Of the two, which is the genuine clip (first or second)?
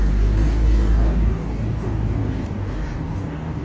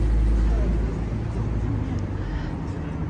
second